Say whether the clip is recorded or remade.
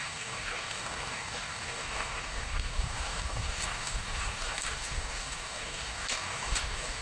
remade